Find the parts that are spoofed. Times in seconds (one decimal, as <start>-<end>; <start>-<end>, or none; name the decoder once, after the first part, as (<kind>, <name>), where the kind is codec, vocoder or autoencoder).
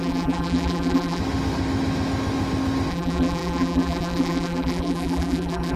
0.0-1.2 (vocoder, BigVGAN v2); 2.9-5.8